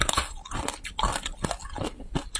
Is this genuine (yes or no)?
yes